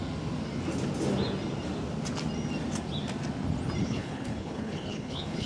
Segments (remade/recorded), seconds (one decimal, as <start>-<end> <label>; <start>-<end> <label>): 0.0-3.8 recorded; 3.8-5.5 remade